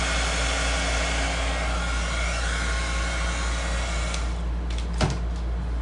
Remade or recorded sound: recorded